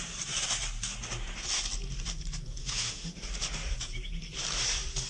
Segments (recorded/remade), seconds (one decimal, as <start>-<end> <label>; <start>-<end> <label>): 0.0-2.6 recorded; 2.6-3.1 remade; 3.1-5.1 recorded